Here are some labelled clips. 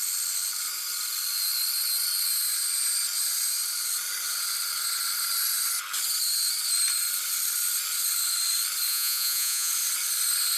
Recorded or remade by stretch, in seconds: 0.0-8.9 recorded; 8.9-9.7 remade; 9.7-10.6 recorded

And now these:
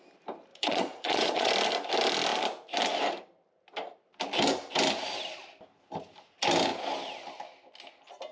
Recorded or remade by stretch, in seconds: 0.0-0.5 recorded; 0.5-1.5 remade; 1.5-8.3 recorded

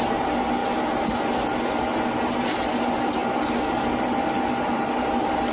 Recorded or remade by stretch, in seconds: 0.0-5.5 recorded